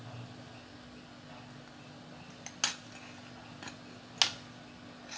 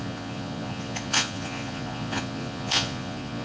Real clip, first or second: first